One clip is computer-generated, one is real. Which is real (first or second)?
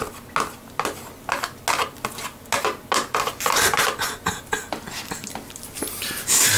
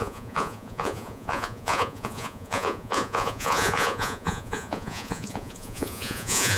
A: first